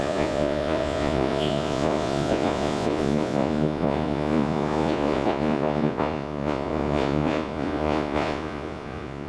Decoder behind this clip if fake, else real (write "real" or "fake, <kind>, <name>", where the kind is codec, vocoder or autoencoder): fake, vocoder, Vocos